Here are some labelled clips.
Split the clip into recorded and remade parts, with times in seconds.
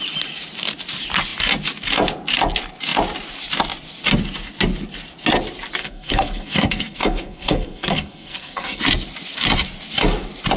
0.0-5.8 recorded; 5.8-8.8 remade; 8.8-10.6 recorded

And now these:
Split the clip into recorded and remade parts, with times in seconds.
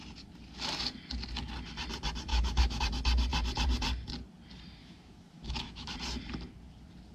0.0-2.3 recorded; 2.3-2.8 remade; 2.8-4.8 recorded; 4.8-5.9 remade; 5.9-7.1 recorded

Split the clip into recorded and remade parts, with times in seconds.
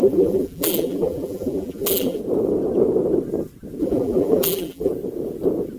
0.0-2.2 remade; 2.2-3.8 recorded; 3.8-4.9 remade; 4.9-5.8 recorded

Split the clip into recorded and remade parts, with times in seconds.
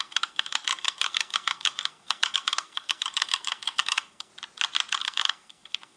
0.0-4.3 remade; 4.3-5.0 recorded; 5.0-6.0 remade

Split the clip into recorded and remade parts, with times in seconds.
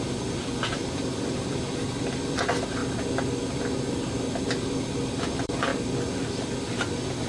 0.0-2.8 remade; 2.8-4.6 recorded; 4.6-5.7 remade; 5.7-6.3 recorded; 6.3-7.3 remade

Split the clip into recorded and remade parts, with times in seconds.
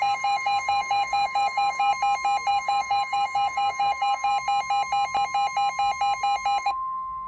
0.0-1.9 remade; 1.9-2.5 recorded; 2.5-4.3 remade; 4.3-6.6 recorded; 6.6-7.3 remade